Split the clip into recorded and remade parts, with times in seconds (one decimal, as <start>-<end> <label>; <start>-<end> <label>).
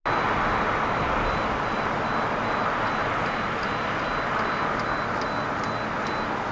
0.0-3.0 recorded; 3.0-3.7 remade; 3.7-6.5 recorded